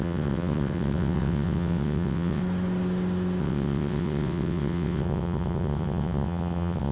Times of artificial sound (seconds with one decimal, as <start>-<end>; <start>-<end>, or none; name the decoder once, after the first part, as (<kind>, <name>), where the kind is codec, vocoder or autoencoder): 0.0-2.4 (vocoder, WaveNeXt); 3.4-6.9